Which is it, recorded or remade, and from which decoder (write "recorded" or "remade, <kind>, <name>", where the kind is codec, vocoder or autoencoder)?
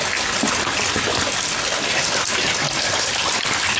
recorded